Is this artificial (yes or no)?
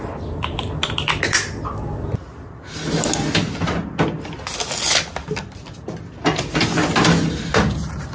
no